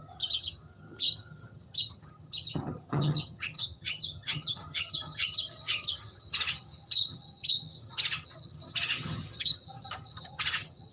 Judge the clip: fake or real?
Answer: fake